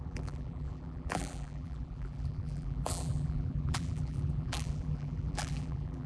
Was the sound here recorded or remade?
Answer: remade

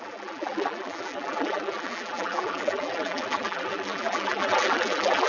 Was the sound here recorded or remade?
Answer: remade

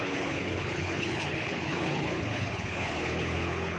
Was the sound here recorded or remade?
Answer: remade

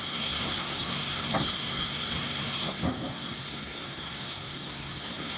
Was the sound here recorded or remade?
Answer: remade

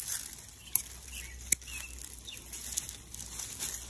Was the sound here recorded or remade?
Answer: recorded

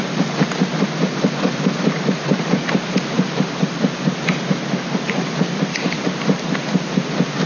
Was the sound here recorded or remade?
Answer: recorded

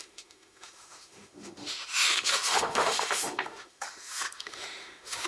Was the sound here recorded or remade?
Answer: remade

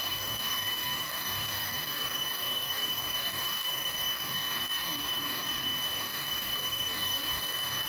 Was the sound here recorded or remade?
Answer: remade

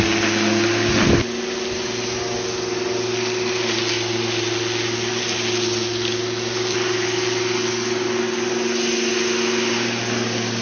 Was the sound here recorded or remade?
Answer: recorded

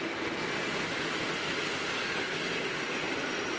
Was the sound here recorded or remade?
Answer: recorded